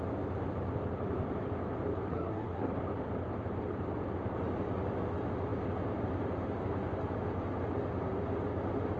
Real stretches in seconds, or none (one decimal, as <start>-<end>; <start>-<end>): 0.0-2.1; 2.7-9.0